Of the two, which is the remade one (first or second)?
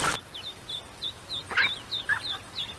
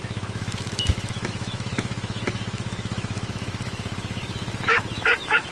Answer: second